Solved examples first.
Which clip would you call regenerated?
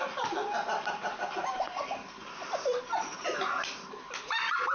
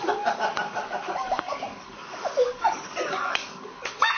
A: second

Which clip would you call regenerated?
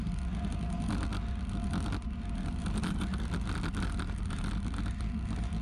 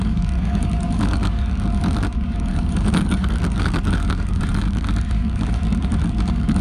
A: second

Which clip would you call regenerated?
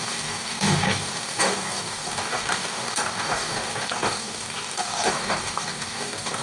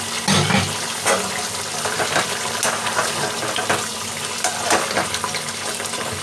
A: first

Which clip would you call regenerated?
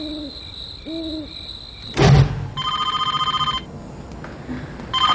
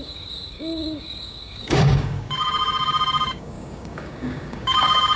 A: second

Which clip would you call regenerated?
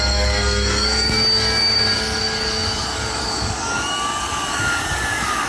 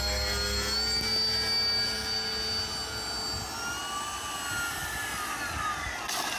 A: first